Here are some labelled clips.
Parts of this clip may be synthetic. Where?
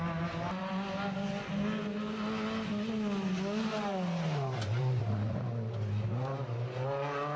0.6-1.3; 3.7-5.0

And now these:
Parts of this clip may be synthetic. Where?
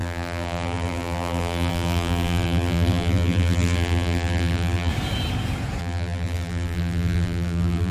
0.0-4.9; 5.8-7.9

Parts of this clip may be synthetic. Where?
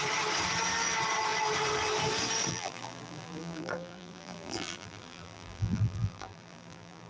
2.5-7.1